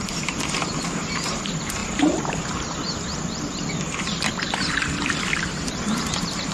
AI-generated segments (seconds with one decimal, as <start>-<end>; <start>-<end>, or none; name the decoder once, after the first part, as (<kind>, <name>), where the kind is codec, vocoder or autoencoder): 1.8-5.7 (vocoder, BigVGAN v2)